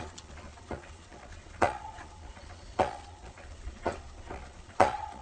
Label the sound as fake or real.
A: fake